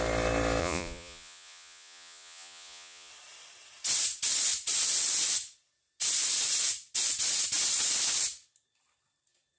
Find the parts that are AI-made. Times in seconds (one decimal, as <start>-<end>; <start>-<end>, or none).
0.6-3.1